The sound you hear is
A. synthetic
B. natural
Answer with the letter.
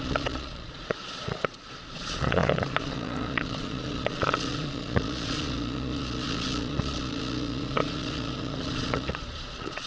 A